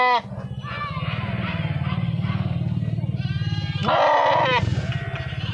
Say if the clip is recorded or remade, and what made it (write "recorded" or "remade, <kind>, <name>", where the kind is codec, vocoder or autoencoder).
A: recorded